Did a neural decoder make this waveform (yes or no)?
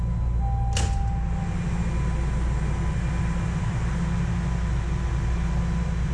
no